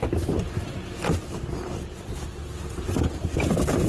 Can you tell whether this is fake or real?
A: real